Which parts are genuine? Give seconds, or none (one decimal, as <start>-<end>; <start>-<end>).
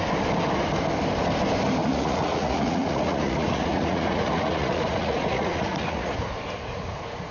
0.0-1.8; 6.2-7.3